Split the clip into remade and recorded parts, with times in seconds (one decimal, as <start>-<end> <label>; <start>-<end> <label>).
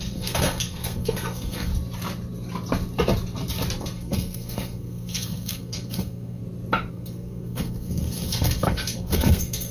0.0-1.7 remade; 1.7-3.8 recorded; 3.8-6.4 remade; 6.4-6.9 recorded; 6.9-9.7 remade